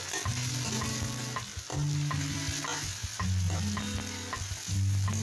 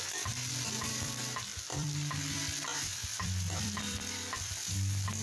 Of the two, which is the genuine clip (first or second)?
first